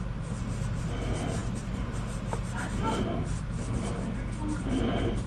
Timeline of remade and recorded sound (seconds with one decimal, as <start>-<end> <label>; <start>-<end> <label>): 0.0-5.3 recorded